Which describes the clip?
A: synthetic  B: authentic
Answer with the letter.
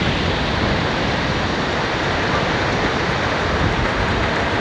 B